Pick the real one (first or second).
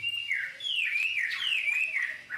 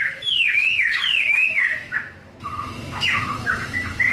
first